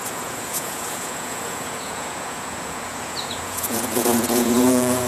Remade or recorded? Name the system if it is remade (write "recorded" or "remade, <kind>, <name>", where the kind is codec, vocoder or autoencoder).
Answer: remade, vocoder, Vocos